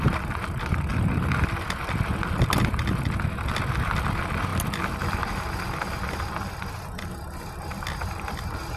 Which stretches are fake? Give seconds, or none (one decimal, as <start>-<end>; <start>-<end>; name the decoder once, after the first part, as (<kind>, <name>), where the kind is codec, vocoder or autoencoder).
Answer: none